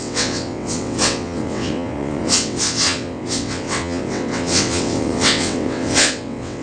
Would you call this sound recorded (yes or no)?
no